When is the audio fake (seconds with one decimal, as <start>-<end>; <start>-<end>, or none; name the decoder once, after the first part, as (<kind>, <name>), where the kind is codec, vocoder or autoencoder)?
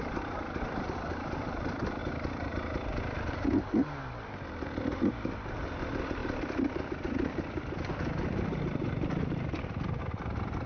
0.0-2.0 (vocoder, BigVGAN v2); 5.1-10.7